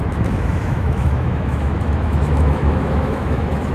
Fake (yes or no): yes